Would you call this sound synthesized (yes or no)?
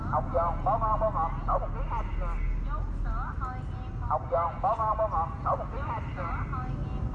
no